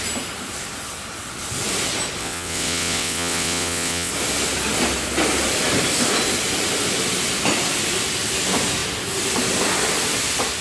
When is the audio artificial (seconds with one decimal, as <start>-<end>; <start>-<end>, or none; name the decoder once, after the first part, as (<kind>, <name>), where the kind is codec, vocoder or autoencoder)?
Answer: 2.2-4.1 (vocoder, WaveNeXt)